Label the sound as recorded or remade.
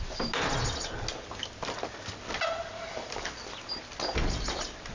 recorded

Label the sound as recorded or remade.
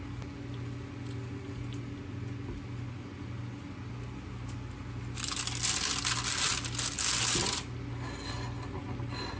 recorded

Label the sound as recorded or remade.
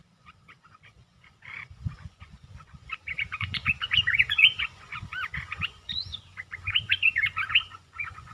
remade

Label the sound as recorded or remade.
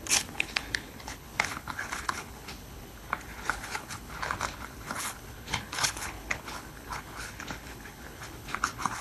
remade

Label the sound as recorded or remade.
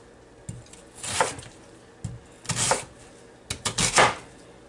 recorded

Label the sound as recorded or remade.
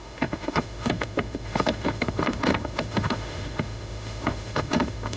remade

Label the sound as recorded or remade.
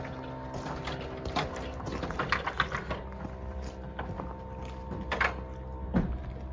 recorded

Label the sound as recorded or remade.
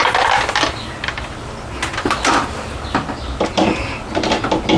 recorded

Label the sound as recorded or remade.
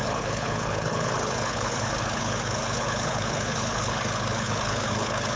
remade